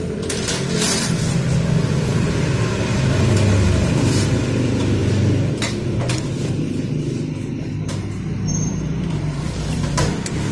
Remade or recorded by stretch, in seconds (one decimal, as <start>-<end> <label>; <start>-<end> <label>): 0.0-5.0 remade; 5.0-6.5 recorded; 6.5-10.5 remade